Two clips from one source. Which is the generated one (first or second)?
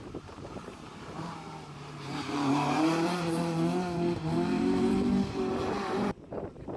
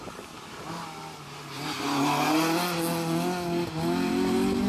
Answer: first